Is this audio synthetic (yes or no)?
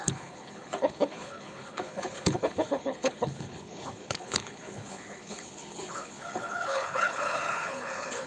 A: yes